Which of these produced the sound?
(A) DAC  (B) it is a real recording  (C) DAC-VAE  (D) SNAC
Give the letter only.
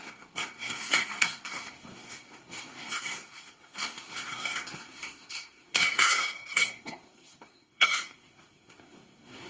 D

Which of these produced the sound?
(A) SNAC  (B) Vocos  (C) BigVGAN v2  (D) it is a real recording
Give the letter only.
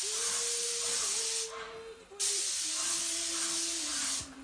D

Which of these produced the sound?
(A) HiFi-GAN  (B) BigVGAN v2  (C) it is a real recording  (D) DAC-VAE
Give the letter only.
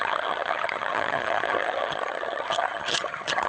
A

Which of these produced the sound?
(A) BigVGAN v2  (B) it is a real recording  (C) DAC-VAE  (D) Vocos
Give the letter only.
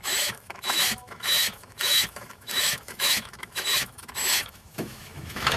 C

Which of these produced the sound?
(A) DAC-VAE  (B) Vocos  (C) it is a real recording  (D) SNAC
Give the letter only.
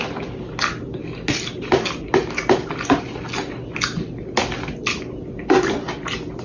C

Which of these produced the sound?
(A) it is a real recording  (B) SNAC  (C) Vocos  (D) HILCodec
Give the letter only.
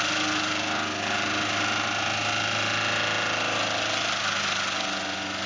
A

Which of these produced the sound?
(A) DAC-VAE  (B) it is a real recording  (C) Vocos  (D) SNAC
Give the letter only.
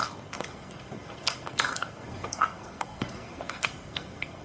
D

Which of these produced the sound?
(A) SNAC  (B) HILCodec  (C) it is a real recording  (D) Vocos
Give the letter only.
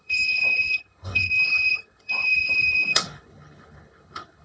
B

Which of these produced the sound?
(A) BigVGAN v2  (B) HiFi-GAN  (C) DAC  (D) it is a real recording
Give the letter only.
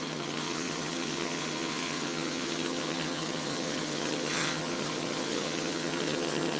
B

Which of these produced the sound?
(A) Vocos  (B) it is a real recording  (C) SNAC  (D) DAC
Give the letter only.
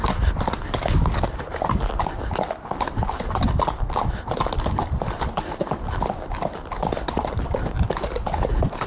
B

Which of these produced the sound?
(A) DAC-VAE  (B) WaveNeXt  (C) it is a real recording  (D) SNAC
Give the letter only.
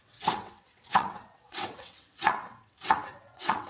B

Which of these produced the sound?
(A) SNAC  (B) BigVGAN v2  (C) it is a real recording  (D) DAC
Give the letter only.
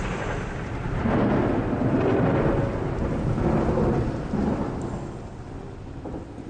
C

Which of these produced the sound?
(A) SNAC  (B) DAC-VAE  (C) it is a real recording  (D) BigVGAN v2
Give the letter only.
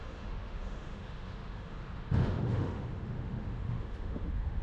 B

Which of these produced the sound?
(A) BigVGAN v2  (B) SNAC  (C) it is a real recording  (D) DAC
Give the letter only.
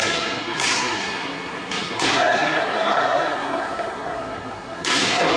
B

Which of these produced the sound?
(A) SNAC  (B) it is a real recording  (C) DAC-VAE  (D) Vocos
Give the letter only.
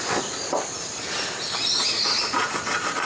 B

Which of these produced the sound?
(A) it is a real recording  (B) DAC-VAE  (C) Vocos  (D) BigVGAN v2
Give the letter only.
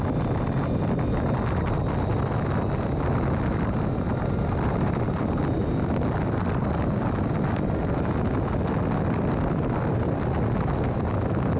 A